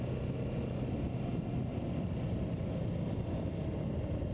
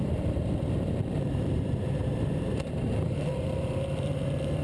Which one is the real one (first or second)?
first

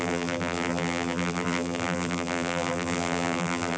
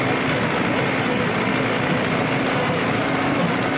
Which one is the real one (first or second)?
second